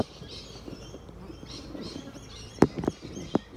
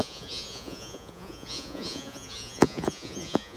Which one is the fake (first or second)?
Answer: second